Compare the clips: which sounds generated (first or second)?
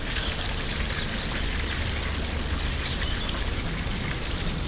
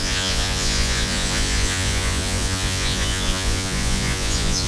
second